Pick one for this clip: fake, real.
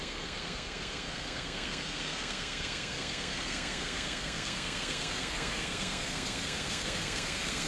fake